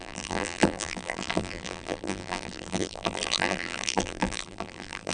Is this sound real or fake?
fake